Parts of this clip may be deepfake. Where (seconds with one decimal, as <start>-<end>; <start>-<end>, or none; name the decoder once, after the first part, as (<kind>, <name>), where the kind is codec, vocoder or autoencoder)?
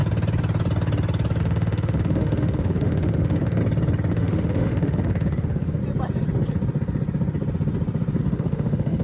1.4-3.6 (autoencoder, DAC-VAE); 4.1-5.8; 8.2-9.0